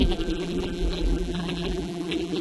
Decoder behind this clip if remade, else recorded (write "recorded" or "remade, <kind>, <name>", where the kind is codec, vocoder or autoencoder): remade, vocoder, BigVGAN v2